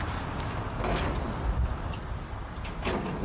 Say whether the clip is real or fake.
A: real